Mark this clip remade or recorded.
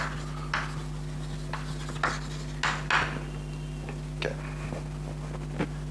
recorded